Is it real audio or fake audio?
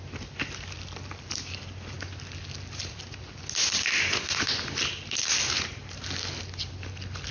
real